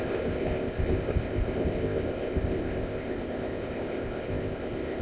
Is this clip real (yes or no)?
no